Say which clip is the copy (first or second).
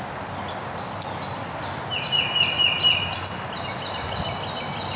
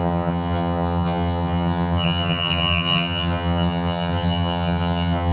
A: second